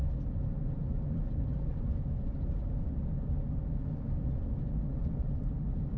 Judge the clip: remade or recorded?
recorded